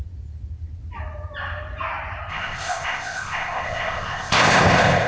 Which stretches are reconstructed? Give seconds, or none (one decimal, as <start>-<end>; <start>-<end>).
2.3-5.1